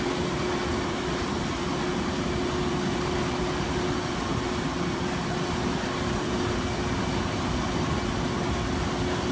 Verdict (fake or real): real